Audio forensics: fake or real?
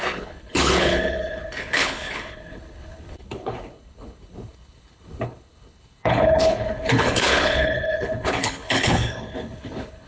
fake